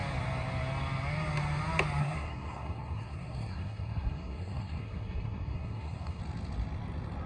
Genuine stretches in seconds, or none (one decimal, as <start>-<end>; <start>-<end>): 0.0-2.0; 6.2-7.3